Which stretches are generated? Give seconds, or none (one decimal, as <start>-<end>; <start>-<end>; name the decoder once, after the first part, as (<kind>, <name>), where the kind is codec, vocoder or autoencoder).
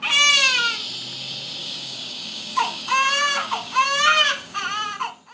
1.6-4.6 (codec, DAC)